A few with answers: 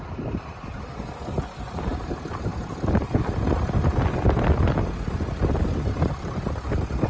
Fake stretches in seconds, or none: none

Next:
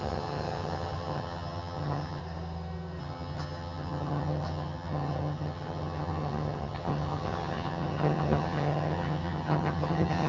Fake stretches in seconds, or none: 0.0-2.2 (vocoder, HiFi-GAN); 3.0-10.3

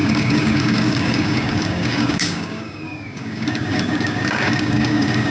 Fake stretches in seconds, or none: 0.0-5.3 (codec, DAC)

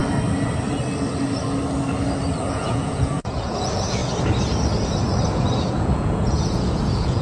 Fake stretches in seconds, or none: 2.4-4.0 (vocoder, Vocos); 5.6-7.2

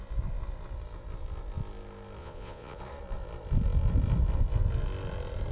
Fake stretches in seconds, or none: 2.2-2.8 (vocoder, Vocos)

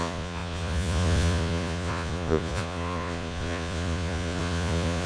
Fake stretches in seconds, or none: 0.0-5.1 (vocoder, Vocos)

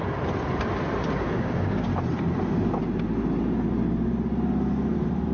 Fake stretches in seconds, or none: 1.2-1.9 (codec, DAC)